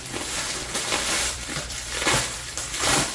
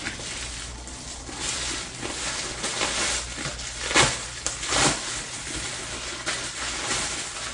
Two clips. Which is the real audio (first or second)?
second